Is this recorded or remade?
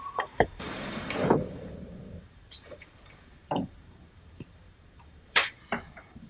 remade